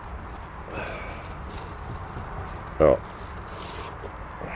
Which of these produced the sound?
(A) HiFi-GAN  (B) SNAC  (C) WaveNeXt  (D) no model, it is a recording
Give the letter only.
D